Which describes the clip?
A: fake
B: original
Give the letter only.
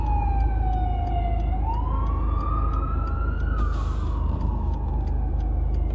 B